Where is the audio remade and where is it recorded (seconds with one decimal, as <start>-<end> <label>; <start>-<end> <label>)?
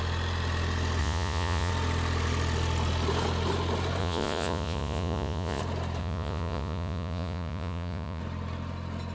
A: 0.0-1.0 recorded; 1.0-1.7 remade; 1.7-4.0 recorded; 4.0-5.6 remade; 5.6-6.0 recorded; 6.0-8.2 remade; 8.2-9.1 recorded